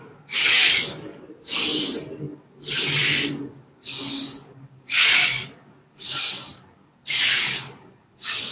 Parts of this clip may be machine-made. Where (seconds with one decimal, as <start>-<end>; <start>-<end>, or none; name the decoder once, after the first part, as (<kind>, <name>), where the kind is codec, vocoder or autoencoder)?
0.0-1.7 (codec, DAC); 2.2-2.6; 3.3-8.5